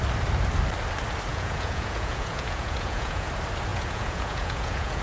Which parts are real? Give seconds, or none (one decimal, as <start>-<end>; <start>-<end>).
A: 0.0-1.3; 3.3-3.7